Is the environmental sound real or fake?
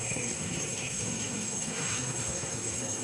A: fake